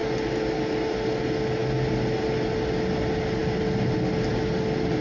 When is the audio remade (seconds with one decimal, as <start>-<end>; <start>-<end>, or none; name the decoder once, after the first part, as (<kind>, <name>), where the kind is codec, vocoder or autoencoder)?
none